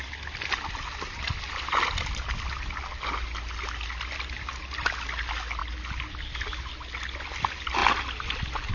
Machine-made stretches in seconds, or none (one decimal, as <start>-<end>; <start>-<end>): none